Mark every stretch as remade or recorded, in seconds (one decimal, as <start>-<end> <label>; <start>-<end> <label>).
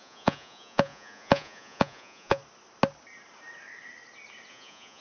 0.0-2.4 remade; 2.4-4.5 recorded; 4.5-5.0 remade